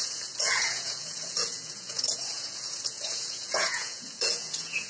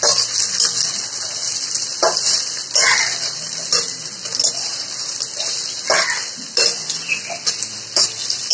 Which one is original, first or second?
second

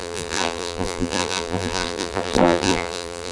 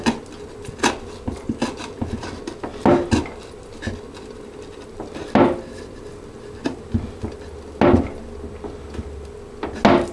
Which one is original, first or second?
second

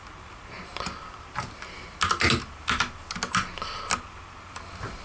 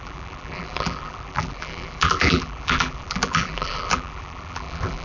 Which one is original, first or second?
first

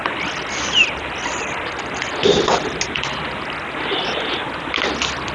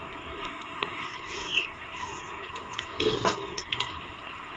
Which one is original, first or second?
first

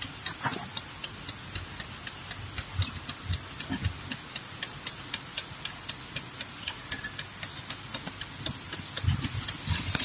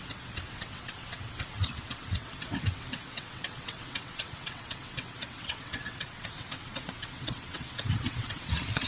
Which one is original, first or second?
first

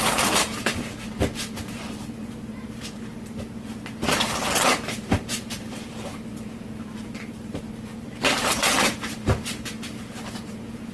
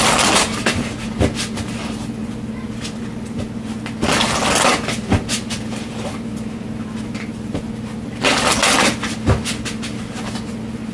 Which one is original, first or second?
second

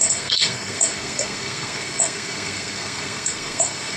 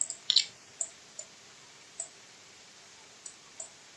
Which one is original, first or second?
second